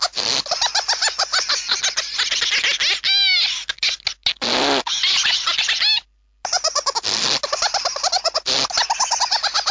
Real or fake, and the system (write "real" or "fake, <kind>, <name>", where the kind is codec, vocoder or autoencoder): real